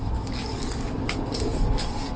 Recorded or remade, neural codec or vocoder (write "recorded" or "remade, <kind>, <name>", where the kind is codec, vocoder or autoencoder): remade, codec, DAC